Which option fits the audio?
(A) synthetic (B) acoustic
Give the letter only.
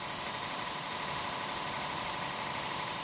B